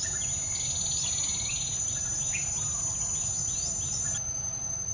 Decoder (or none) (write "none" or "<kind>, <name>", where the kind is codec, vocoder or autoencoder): none